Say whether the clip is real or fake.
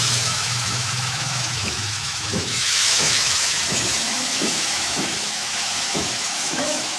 fake